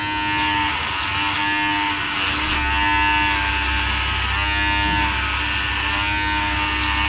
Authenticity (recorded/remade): recorded